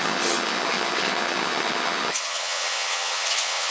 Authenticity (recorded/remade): remade